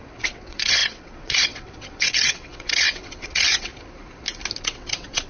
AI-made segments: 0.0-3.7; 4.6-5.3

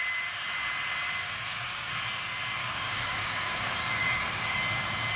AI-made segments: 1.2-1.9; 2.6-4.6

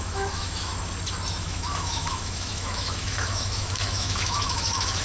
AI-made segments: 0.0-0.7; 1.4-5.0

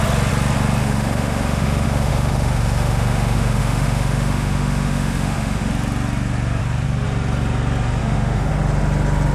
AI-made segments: 0.8-5.7; 8.0-8.5

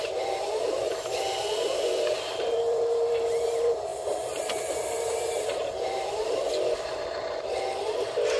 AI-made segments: 0.0-8.4